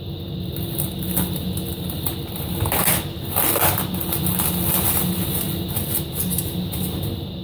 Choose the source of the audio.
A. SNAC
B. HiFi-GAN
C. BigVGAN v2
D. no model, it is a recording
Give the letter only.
D